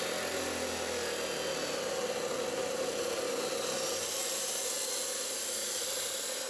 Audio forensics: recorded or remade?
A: recorded